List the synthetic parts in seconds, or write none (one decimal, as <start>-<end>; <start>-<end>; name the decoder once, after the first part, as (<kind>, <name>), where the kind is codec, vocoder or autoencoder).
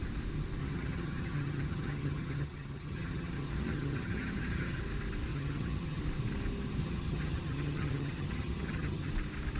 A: 0.6-4.8 (vocoder, HiFi-GAN); 5.3-6.0; 6.8-9.1